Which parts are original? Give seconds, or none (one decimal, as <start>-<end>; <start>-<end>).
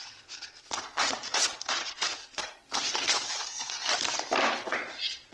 2.4-4.7